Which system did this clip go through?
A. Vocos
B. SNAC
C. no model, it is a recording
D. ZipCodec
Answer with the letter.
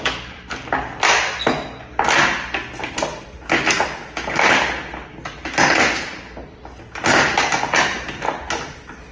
C